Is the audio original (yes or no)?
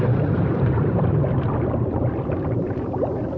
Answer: no